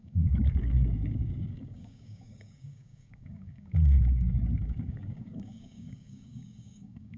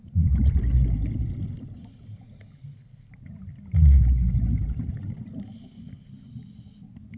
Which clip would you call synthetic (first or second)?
first